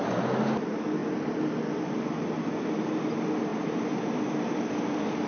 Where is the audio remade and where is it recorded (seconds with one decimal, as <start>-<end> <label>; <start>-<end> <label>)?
0.0-5.3 recorded